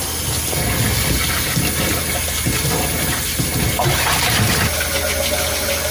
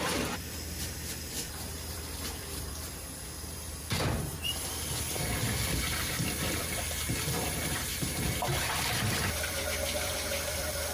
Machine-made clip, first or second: second